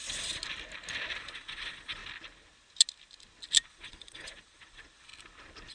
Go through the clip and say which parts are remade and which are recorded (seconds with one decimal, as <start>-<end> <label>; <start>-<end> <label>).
0.0-0.4 remade; 0.4-1.2 recorded; 1.2-2.0 remade; 2.0-3.7 recorded; 3.7-5.1 remade; 5.1-5.7 recorded